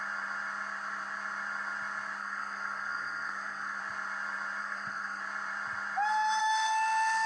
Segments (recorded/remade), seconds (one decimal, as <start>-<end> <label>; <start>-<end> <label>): 0.0-2.2 recorded; 2.2-3.8 remade; 3.8-4.6 recorded; 4.6-5.2 remade; 5.2-6.4 recorded; 6.4-7.3 remade